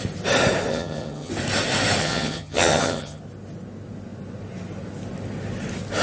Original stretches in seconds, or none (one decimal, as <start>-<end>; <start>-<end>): 0.0-0.7; 1.3-2.0; 3.2-6.0